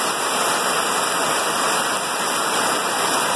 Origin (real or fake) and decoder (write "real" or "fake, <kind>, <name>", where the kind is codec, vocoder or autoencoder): real